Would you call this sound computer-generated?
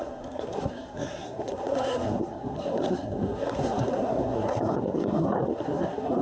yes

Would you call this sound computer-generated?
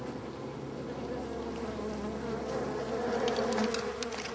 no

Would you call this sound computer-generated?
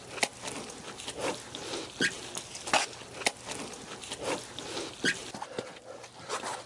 no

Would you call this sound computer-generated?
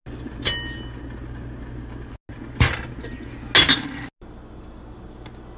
no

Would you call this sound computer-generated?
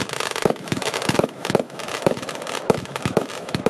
yes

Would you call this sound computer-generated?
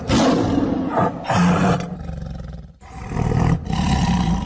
no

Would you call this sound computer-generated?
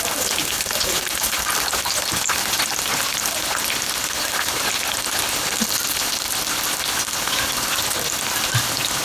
no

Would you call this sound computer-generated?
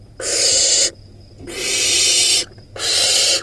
no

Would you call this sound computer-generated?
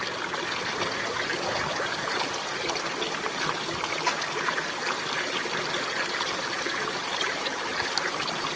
no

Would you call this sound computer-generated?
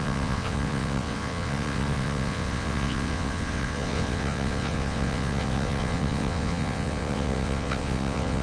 yes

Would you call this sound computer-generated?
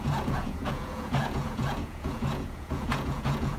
yes